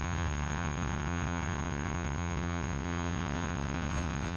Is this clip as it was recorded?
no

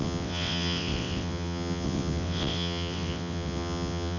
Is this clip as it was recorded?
no